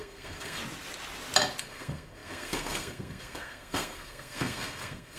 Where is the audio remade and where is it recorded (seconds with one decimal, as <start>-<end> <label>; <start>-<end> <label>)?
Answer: 0.0-0.6 remade; 0.6-1.6 recorded; 1.6-5.2 remade